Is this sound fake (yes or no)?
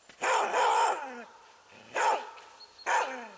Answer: no